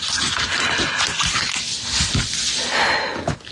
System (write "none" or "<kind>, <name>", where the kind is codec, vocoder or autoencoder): none